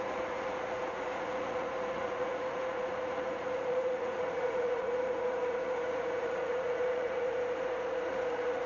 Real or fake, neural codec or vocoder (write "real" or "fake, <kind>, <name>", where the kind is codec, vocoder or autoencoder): fake, vocoder, Vocos